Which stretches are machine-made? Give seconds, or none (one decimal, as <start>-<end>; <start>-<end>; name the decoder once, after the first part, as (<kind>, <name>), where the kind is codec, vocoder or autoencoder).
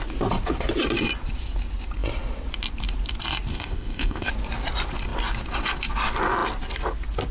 3.5-4.3 (codec, ZipCodec)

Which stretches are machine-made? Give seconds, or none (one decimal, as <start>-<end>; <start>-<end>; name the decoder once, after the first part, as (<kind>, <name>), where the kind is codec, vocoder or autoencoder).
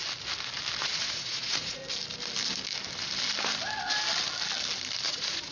0.8-1.8 (vocoder, Vocos); 5.1-5.5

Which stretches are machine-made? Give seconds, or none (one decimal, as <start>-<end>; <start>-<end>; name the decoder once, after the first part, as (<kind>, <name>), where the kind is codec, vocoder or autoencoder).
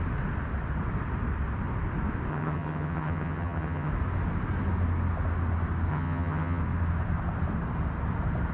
2.3-3.9 (vocoder, HiFi-GAN); 5.9-6.6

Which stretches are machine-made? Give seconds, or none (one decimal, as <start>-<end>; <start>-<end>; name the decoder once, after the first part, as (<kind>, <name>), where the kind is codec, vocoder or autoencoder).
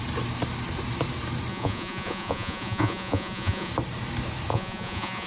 1.5-3.7 (vocoder, Vocos); 4.5-5.3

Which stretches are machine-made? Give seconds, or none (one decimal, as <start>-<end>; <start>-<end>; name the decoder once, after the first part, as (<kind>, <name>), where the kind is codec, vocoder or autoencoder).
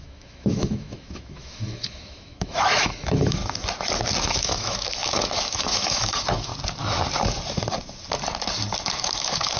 0.0-3.4 (autoencoder, DAC-VAE); 4.3-6.5; 9.0-9.6